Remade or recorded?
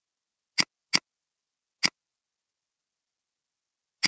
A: recorded